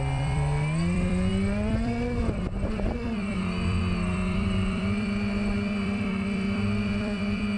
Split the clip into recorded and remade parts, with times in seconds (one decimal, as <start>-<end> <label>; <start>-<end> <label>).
0.0-7.6 remade